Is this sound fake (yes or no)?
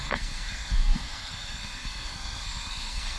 yes